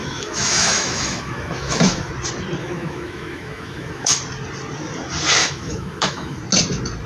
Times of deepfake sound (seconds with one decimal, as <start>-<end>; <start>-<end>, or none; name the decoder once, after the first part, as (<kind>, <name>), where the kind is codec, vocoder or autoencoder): 0.0-2.1 (autoencoder, DAC-VAE); 2.6-4.2; 5.4-6.4